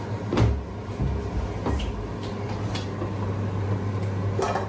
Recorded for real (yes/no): yes